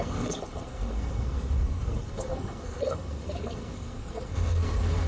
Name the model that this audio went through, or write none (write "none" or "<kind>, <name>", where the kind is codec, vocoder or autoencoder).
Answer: codec, SNAC